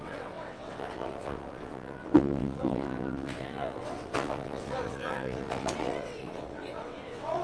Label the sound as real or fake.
fake